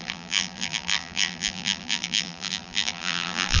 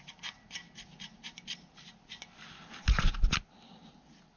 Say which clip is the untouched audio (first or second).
second